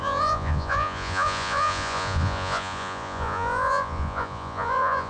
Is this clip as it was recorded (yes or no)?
no